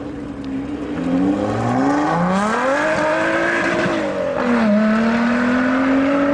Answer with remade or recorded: recorded